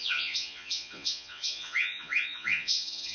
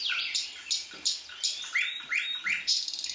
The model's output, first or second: first